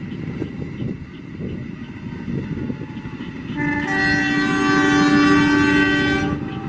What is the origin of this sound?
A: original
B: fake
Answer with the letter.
A